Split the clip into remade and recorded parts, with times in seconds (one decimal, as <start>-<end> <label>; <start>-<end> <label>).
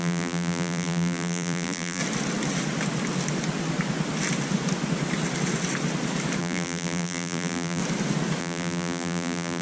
0.0-2.0 remade; 2.0-6.4 recorded; 6.4-7.8 remade; 7.8-8.4 recorded; 8.4-9.6 remade